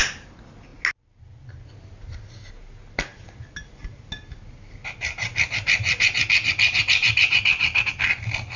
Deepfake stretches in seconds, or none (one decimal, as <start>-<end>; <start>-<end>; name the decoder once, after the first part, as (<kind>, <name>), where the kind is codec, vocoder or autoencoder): none